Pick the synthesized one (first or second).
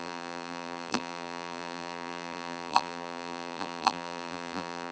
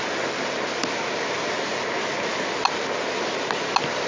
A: first